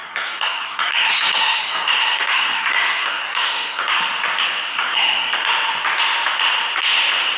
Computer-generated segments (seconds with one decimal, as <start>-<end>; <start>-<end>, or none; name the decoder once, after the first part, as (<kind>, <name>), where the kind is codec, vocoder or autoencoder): 0.0-4.0 (codec, SNAC); 4.7-5.3